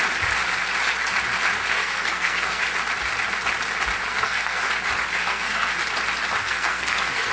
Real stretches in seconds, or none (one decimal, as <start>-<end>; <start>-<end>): 0.0-1.7; 2.6-4.1; 4.7-5.2; 5.7-6.4